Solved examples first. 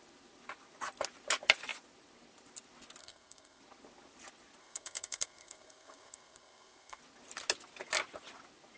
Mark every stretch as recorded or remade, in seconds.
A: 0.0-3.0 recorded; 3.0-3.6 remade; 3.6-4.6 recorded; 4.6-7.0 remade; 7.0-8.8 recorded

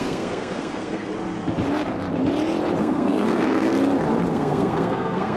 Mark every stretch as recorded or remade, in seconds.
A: 0.0-1.1 remade; 1.1-2.8 recorded; 2.8-3.7 remade; 3.7-4.3 recorded; 4.3-5.4 remade

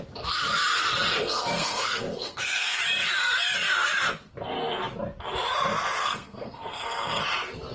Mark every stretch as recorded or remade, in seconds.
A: 0.0-1.2 recorded; 1.2-2.8 remade; 2.8-6.0 recorded; 6.0-7.2 remade; 7.2-7.7 recorded

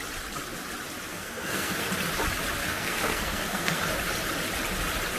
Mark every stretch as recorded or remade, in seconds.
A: 0.0-1.1 recorded; 1.1-1.9 remade; 1.9-2.6 recorded; 2.6-3.8 remade; 3.8-5.2 recorded

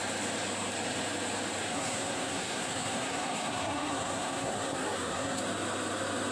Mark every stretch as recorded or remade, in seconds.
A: 0.0-1.6 recorded; 1.6-5.4 remade; 5.4-6.3 recorded

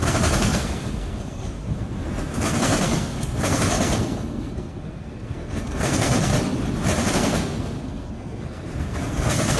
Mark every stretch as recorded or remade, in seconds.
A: 0.0-6.3 remade; 6.3-7.1 recorded; 7.1-9.6 remade

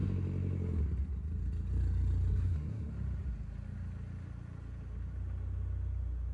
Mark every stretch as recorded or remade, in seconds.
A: 0.0-2.3 recorded; 2.3-2.9 remade; 2.9-6.3 recorded

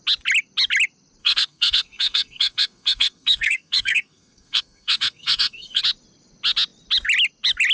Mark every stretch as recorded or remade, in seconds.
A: 0.0-1.2 recorded; 1.2-5.8 remade; 5.8-7.7 recorded